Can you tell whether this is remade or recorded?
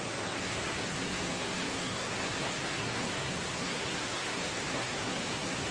remade